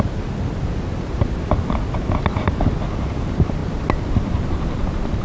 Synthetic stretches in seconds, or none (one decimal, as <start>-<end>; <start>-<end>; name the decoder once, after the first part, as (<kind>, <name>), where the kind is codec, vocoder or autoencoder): none